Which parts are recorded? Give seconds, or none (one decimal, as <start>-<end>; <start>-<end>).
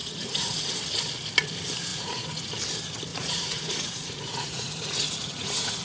0.7-1.9; 2.5-3.1